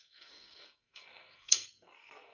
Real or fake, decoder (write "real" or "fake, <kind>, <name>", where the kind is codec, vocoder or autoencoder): fake, codec, SNAC